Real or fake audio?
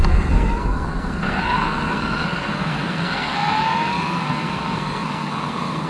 fake